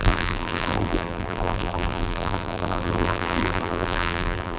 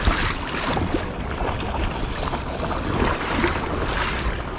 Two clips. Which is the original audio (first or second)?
second